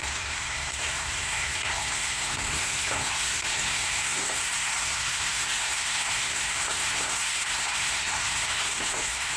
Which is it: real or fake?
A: fake